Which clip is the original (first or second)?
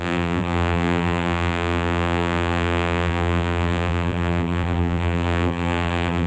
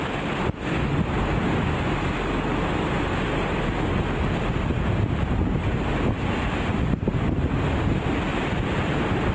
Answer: second